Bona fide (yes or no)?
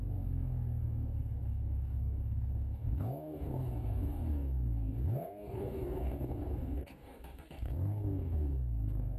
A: no